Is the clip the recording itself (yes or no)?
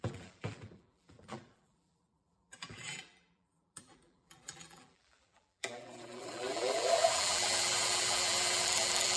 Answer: no